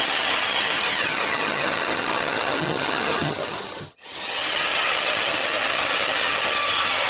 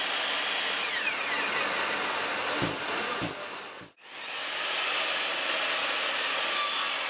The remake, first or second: first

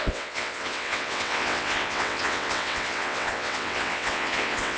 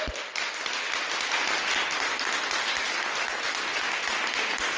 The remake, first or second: first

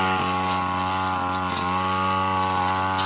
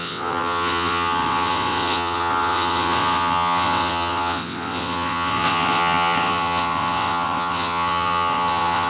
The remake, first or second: second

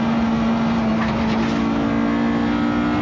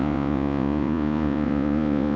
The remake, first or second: second